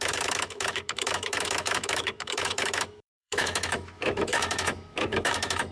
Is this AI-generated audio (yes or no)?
yes